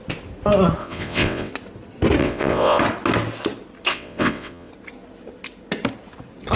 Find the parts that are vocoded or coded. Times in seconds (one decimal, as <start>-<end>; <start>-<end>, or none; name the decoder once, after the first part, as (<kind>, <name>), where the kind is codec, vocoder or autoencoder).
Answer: 0.8-1.5 (vocoder, WaveNeXt); 2.2-2.8; 3.9-4.7